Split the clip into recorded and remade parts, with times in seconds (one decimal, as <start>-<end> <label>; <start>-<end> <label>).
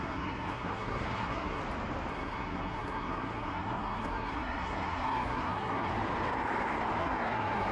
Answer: 0.0-1.6 remade; 1.6-2.1 recorded; 2.1-5.9 remade; 5.9-7.0 recorded; 7.0-7.7 remade